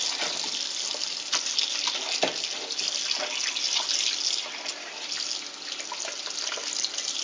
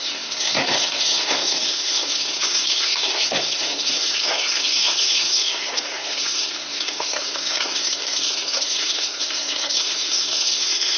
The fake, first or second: second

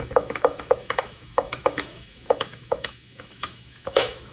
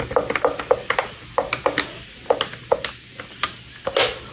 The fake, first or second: first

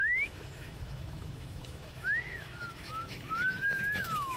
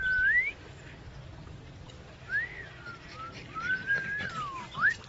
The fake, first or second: first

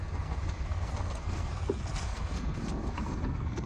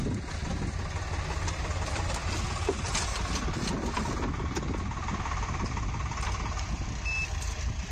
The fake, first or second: first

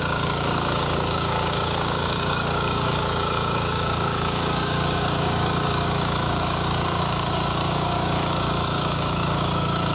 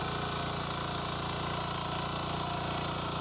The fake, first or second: first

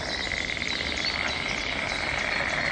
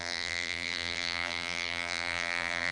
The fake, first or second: second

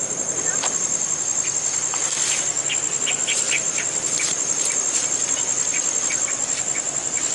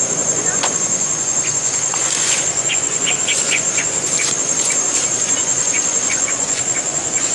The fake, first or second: second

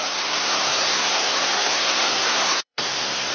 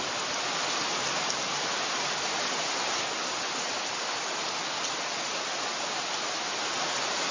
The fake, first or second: first